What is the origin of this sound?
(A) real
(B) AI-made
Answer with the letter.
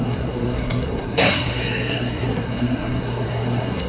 B